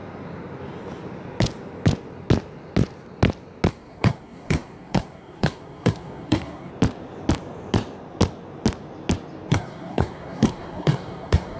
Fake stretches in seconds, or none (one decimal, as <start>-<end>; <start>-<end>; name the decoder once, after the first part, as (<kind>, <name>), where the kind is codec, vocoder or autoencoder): 3.7-6.7 (codec, SNAC); 9.5-11.6